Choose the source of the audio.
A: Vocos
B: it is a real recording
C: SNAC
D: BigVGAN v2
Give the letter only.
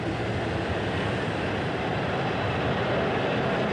B